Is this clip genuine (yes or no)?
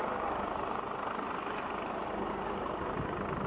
yes